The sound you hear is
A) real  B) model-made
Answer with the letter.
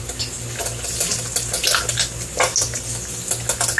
A